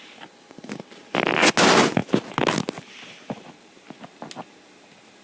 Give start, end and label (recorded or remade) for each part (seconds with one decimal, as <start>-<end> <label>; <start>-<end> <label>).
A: 0.0-5.2 recorded